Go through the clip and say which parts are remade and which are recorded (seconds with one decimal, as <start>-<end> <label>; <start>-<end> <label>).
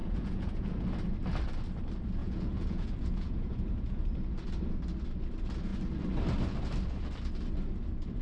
0.0-0.7 remade; 0.7-2.2 recorded; 2.2-4.0 remade; 4.0-8.2 recorded